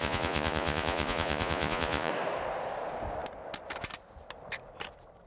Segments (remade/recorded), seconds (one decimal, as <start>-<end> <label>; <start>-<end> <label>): 0.0-2.1 remade; 2.1-5.3 recorded